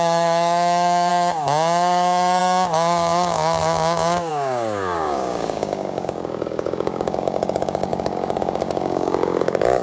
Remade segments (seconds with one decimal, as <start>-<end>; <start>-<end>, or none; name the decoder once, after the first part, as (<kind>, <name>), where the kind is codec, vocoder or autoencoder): 0.0-9.8 (codec, DAC)